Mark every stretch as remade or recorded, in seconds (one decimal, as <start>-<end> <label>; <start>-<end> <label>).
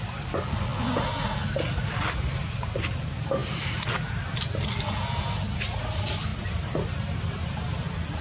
0.0-8.2 recorded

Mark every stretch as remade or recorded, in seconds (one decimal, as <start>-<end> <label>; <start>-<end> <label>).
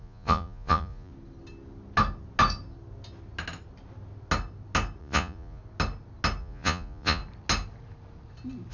0.0-1.1 remade; 1.1-5.0 recorded; 5.0-5.6 remade; 5.6-6.4 recorded; 6.4-7.2 remade; 7.2-8.7 recorded